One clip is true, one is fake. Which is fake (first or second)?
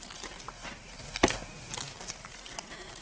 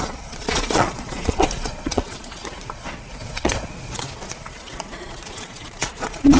second